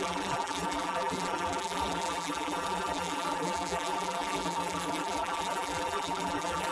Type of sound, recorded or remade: remade